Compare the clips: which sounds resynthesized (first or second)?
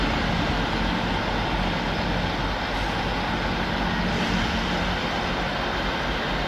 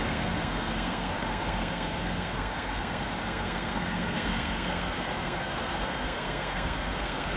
second